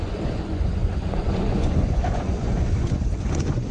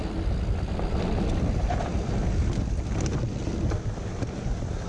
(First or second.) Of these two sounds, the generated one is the first